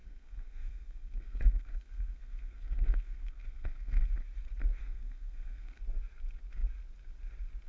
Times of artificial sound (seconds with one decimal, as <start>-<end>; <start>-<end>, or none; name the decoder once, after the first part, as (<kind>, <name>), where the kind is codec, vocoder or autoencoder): 0.0-4.1 (codec, SNAC); 4.8-5.8